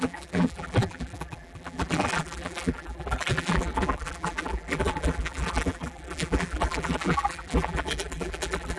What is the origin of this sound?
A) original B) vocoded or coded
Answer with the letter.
B